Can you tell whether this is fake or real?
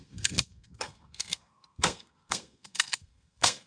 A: fake